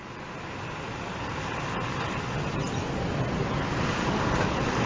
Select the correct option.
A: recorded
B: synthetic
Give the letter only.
A